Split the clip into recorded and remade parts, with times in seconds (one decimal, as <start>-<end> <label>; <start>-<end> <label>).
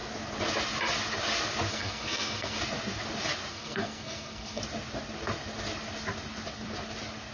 0.0-1.7 recorded; 1.7-2.6 remade; 2.6-3.5 recorded; 3.5-4.6 remade; 4.6-7.3 recorded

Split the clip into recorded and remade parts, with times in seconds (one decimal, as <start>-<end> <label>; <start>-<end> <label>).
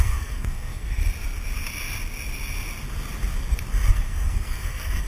0.0-1.0 remade; 1.0-3.9 recorded; 3.9-5.1 remade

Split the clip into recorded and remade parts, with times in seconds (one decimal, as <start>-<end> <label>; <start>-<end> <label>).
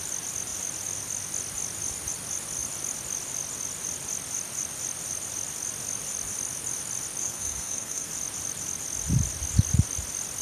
0.0-7.2 recorded; 7.2-8.1 remade; 8.1-10.4 recorded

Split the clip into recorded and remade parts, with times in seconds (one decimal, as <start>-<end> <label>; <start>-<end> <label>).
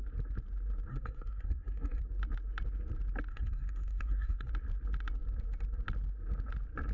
0.0-0.9 recorded; 0.9-2.0 remade; 2.0-3.3 recorded; 3.3-4.5 remade; 4.5-6.9 recorded